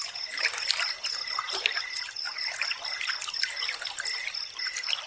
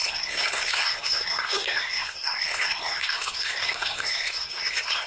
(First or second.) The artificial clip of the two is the second